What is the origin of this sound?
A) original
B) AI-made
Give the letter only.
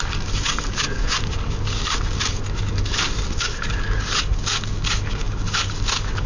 B